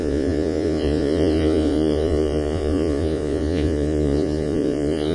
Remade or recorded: remade